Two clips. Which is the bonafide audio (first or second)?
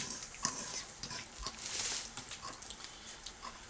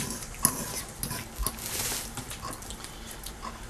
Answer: second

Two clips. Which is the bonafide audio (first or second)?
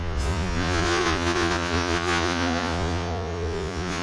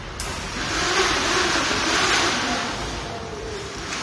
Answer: second